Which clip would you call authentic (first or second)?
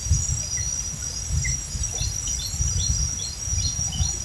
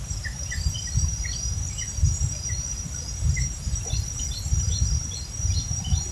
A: first